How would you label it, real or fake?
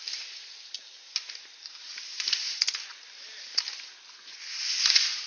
real